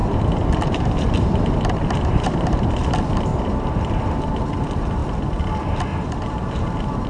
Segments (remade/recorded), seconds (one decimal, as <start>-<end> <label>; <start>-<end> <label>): 0.0-2.7 remade; 2.7-3.3 recorded; 3.3-4.2 remade; 4.2-5.9 recorded; 5.9-7.1 remade